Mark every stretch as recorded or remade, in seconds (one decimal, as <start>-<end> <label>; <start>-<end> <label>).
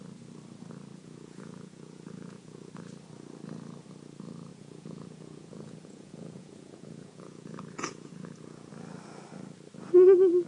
0.0-0.9 recorded; 0.9-2.7 remade; 2.7-4.5 recorded; 4.5-8.7 remade; 8.7-10.5 recorded